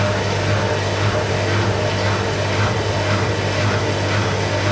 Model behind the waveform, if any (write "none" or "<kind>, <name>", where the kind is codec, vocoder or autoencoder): none